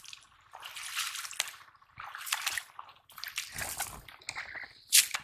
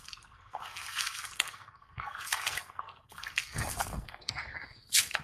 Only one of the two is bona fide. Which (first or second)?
first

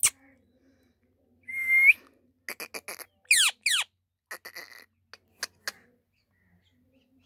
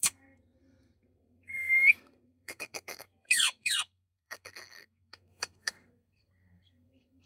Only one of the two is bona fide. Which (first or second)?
first